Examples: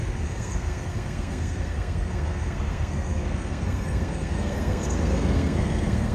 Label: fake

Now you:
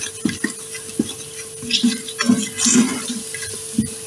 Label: real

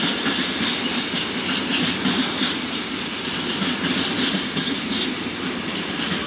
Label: real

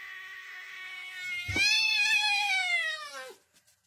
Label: real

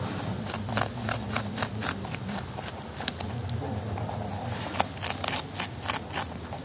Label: real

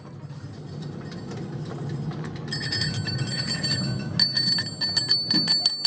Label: real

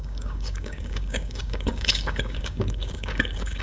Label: fake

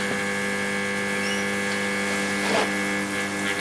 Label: real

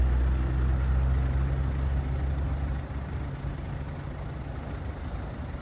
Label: real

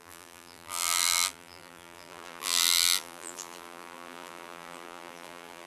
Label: fake